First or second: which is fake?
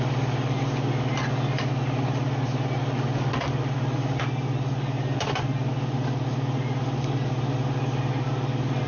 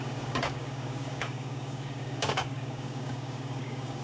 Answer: second